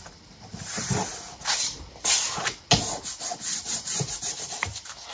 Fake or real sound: real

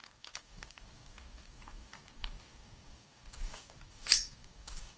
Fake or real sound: fake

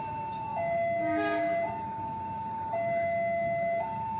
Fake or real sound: fake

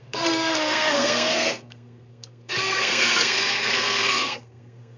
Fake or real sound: fake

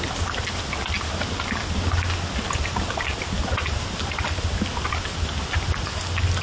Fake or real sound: real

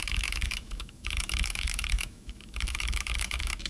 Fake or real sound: fake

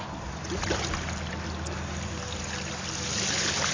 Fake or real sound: real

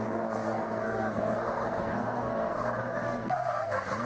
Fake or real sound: fake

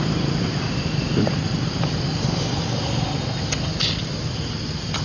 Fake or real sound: real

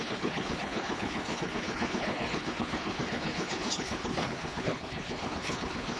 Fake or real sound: fake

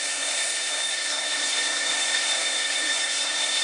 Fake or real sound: fake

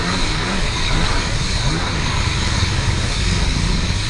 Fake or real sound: fake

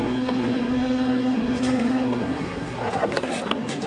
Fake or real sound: fake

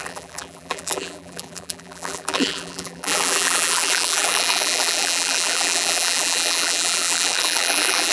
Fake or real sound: fake